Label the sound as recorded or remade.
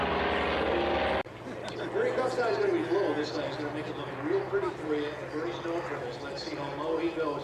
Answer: recorded